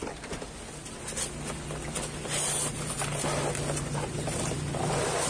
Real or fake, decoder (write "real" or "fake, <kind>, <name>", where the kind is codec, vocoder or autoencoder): real